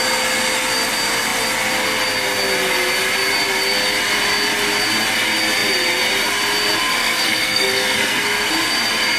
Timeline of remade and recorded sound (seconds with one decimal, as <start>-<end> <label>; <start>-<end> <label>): 0.0-7.0 recorded; 7.0-8.5 remade; 8.5-9.2 recorded

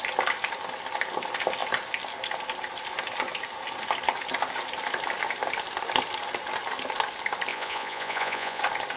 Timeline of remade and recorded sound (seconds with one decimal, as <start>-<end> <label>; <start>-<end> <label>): 0.0-7.5 recorded; 7.5-8.6 remade; 8.6-9.0 recorded

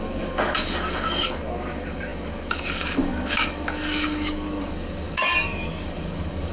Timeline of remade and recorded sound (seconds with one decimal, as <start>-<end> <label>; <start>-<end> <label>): 0.0-6.5 remade

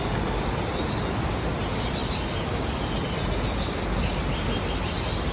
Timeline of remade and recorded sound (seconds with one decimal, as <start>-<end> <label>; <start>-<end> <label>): 0.0-5.3 recorded

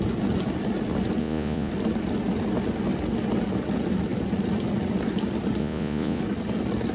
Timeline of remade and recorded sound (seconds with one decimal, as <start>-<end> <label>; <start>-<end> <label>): 0.0-1.2 recorded; 1.2-1.7 remade; 1.7-5.6 recorded; 5.6-6.2 remade; 6.2-6.9 recorded

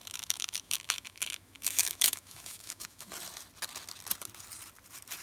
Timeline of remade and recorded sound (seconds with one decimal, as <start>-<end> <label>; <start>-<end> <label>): 0.0-3.1 remade; 3.1-5.2 recorded